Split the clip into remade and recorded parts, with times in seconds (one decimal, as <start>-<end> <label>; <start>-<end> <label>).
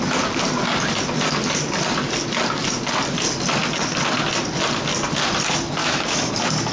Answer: 0.0-5.8 recorded; 5.8-6.3 remade; 6.3-6.7 recorded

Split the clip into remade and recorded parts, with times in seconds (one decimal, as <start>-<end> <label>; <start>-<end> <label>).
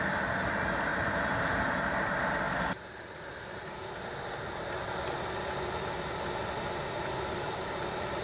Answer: 0.0-8.2 recorded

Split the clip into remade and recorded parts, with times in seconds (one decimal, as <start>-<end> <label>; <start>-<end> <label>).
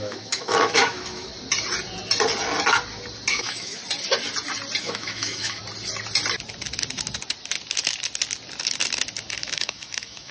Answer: 0.0-1.3 remade; 1.3-3.3 recorded; 3.3-3.8 remade; 3.8-4.8 recorded; 4.8-5.6 remade; 5.6-9.4 recorded; 9.4-10.3 remade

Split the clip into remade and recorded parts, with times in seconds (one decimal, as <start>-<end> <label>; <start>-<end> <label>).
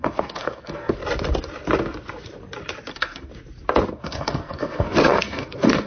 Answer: 0.0-1.0 remade; 1.0-2.9 recorded; 2.9-3.3 remade; 3.3-3.9 recorded; 3.9-5.9 remade